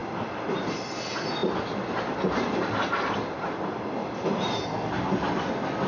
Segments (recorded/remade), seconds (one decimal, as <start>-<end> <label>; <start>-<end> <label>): 0.0-5.9 recorded